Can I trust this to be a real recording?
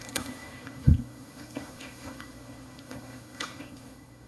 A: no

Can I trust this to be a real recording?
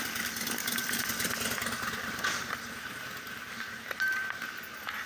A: yes